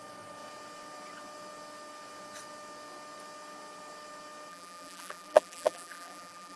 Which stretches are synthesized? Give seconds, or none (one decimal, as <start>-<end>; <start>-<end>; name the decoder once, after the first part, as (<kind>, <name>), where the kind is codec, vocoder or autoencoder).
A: 4.5-6.6 (vocoder, BigVGAN v2)

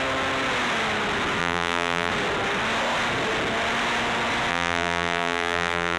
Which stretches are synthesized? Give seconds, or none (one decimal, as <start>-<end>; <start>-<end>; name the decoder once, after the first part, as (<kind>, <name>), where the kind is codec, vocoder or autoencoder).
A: 1.4-2.1 (vocoder, BigVGAN v2); 4.5-6.0

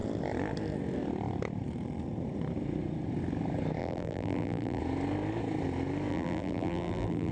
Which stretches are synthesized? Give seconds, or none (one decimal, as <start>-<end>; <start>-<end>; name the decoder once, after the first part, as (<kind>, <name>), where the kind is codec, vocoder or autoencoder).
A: 3.8-4.8 (vocoder, BigVGAN v2); 6.1-7.3

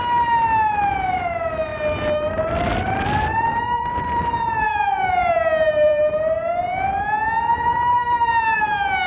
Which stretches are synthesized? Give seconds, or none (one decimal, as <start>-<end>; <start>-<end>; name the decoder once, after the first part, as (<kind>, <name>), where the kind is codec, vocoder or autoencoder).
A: 1.7-6.0 (vocoder, BigVGAN v2); 7.5-8.6

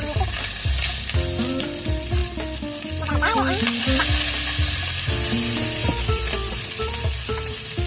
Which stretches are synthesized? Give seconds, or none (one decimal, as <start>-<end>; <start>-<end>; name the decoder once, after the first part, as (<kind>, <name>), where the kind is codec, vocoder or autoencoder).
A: 5.8-6.8 (vocoder, BigVGAN v2)

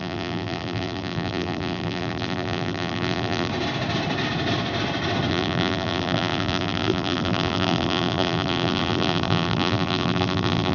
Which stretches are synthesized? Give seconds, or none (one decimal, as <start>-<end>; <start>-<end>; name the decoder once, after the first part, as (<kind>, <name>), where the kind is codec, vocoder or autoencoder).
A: 0.0-3.5 (vocoder, BigVGAN v2); 5.3-10.7

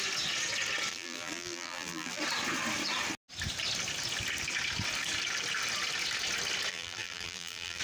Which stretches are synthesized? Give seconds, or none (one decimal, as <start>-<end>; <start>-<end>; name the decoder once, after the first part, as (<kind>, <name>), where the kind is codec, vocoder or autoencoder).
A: 0.9-2.2 (vocoder, BigVGAN v2); 6.7-7.8

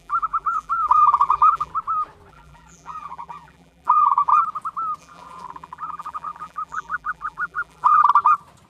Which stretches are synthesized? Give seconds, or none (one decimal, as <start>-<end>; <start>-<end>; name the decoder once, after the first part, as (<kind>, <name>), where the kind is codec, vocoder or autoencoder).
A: 0.0-1.7 (vocoder, BigVGAN v2); 2.3-4.3; 5.0-8.0